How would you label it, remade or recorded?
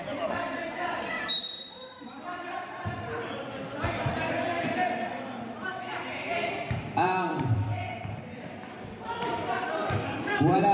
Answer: remade